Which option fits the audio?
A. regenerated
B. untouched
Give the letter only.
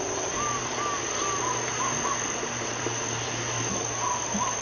B